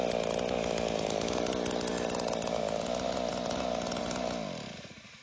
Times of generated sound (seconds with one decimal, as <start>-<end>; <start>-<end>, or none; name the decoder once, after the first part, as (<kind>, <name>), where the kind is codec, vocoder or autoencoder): none